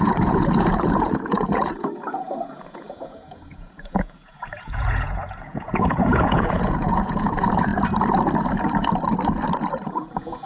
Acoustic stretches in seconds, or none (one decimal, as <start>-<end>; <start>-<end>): 7.7-9.9